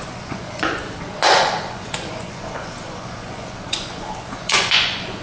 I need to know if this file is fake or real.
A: fake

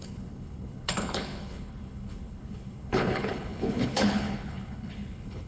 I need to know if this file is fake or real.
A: fake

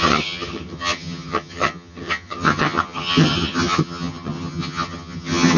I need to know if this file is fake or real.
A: fake